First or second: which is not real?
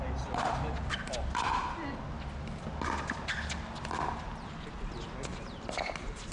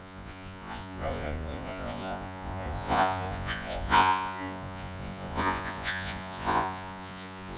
second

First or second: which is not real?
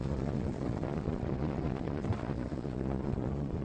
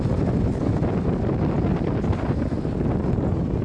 first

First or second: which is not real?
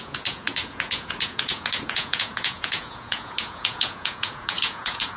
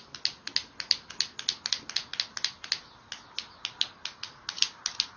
first